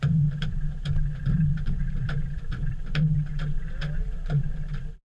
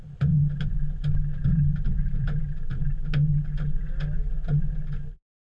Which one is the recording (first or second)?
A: second